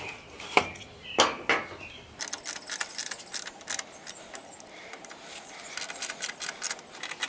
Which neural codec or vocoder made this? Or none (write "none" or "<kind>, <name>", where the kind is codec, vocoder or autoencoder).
none